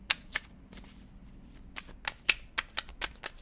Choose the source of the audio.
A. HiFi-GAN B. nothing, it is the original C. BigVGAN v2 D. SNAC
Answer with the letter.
B